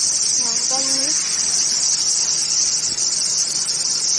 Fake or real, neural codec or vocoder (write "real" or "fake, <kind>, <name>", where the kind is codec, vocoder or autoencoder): real